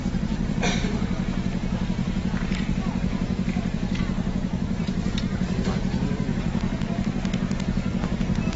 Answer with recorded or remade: remade